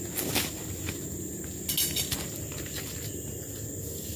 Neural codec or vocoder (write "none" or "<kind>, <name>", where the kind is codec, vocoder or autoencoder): none